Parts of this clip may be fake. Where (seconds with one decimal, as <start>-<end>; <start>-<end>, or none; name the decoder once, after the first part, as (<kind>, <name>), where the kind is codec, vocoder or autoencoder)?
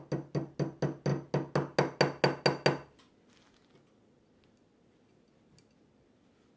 none